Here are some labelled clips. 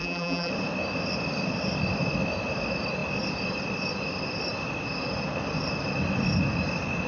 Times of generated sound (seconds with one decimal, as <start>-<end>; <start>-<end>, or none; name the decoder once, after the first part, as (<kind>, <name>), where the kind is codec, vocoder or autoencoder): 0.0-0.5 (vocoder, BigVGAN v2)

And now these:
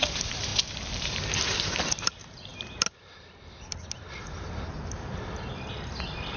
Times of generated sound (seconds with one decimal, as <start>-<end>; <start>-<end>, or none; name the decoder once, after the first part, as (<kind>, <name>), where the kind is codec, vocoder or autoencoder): 0.0-0.5 (vocoder, BigVGAN v2); 1.1-2.5

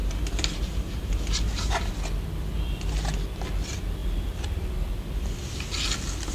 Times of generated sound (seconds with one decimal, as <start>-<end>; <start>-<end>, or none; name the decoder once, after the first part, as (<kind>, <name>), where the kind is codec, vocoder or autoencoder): 0.0-1.9 (vocoder, BigVGAN v2)

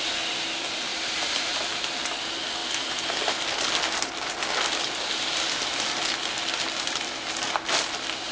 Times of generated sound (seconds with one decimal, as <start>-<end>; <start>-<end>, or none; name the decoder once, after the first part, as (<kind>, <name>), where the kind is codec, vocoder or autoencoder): 0.9-1.8 (vocoder, BigVGAN v2)